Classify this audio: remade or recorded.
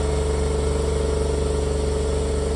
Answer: recorded